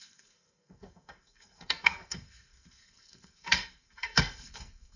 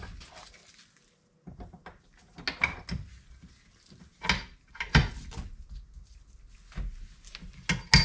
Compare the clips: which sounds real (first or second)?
second